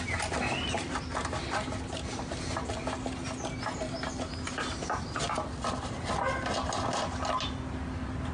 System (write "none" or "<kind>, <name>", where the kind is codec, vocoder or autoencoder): none